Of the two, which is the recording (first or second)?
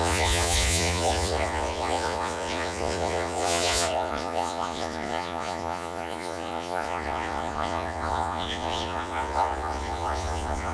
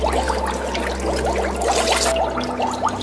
second